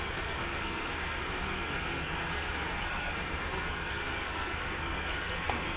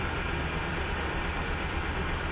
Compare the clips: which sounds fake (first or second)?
first